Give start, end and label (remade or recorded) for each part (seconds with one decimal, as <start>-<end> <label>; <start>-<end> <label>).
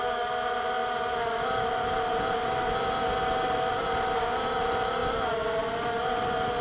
0.0-6.6 recorded